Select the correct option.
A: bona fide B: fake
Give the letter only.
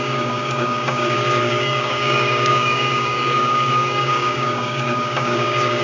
B